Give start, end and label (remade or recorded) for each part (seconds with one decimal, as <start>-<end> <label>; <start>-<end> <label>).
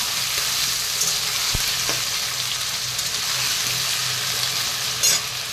0.0-5.5 recorded